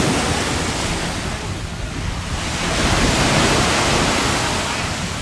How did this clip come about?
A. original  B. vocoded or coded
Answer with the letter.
A